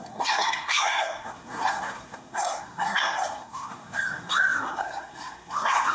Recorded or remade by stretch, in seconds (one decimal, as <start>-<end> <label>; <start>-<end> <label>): 0.0-5.9 remade